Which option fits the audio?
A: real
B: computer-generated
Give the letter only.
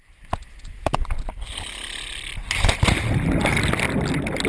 A